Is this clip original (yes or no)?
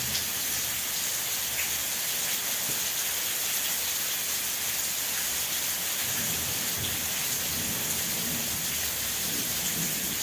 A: yes